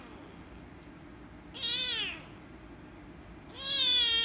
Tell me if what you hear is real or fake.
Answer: real